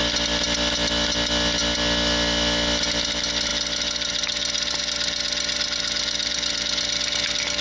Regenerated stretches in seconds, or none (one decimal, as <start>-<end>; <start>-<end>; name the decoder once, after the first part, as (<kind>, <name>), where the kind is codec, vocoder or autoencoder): none